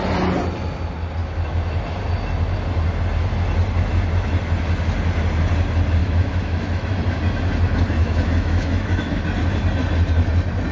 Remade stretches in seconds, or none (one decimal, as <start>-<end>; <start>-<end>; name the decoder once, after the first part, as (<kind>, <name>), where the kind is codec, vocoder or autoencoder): 6.0-6.9 (autoencoder, DAC-VAE); 8.0-9.2